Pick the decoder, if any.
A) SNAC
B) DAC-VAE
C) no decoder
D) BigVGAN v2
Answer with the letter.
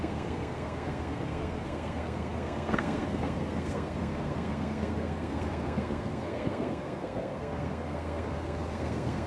A